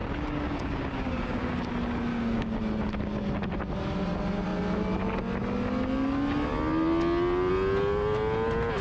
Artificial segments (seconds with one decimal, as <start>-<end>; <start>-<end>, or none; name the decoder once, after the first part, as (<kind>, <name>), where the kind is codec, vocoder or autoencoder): 0.0-1.7 (codec, DAC); 2.1-2.6